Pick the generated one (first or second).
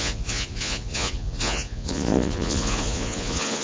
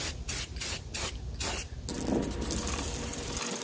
first